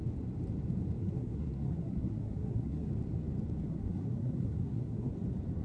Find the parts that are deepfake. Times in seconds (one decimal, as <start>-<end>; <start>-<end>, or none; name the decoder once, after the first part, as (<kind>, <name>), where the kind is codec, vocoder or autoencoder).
1.0-2.9 (codec, SNAC); 3.7-5.1